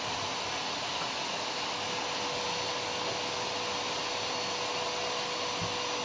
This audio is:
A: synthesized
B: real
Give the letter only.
B